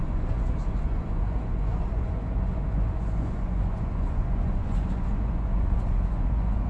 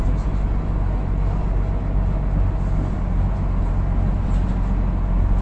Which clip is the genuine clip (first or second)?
second